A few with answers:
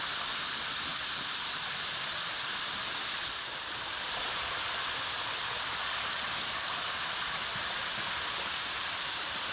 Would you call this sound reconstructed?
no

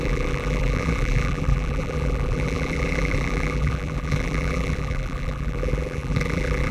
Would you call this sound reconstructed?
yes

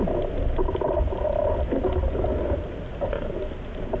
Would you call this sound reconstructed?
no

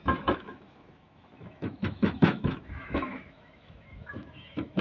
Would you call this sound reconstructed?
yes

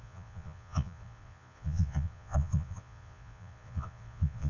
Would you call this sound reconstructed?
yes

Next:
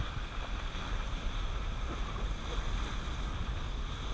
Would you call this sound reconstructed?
no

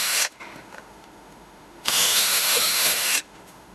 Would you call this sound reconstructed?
yes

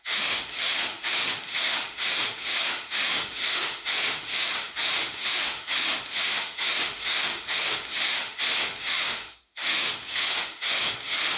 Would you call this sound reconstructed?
yes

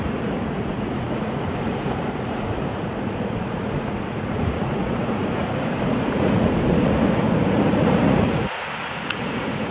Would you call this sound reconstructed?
yes